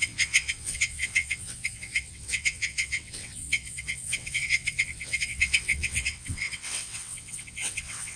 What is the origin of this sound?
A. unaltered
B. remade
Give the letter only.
B